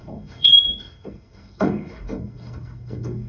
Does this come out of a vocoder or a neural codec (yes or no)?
yes